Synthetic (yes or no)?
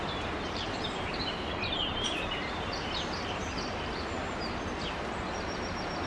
yes